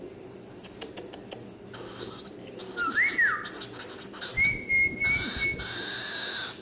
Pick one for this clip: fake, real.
real